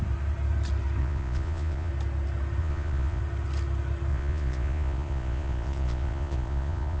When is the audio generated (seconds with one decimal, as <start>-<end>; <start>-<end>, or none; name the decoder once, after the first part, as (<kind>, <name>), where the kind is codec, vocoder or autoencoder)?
1.0-1.9 (vocoder, Vocos); 2.6-3.2; 4.1-7.0